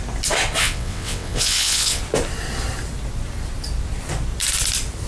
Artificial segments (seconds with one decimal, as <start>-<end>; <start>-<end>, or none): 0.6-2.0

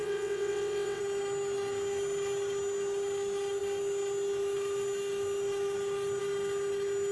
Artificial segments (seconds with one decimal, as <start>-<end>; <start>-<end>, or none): 0.0-1.0

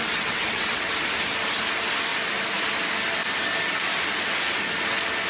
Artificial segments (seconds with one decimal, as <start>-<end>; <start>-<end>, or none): 0.0-0.9

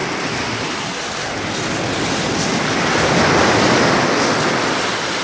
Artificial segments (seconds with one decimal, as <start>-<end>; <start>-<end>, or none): none